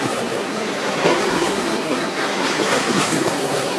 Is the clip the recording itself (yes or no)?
no